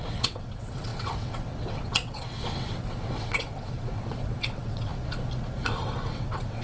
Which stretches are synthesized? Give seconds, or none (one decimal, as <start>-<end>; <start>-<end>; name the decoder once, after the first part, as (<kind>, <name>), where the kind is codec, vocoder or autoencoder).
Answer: 0.0-4.9 (vocoder, WaveNeXt); 5.7-6.6